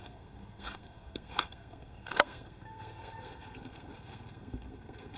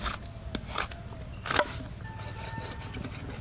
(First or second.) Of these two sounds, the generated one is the first